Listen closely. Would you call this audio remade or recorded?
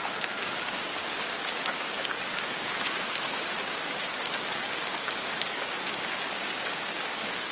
remade